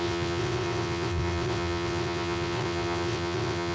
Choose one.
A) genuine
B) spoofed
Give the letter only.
B